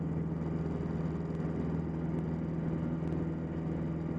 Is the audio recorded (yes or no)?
yes